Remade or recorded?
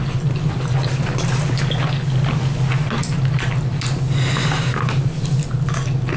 recorded